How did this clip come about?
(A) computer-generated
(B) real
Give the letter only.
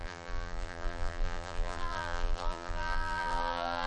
A